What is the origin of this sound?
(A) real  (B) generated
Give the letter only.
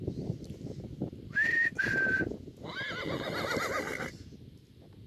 A